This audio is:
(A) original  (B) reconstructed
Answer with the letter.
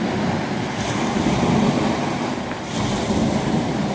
A